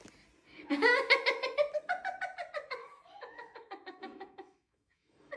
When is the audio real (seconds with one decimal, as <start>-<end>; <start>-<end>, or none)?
0.0-2.8